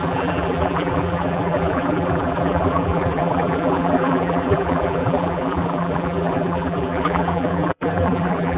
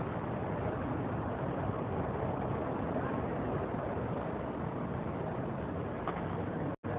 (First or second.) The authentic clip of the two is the second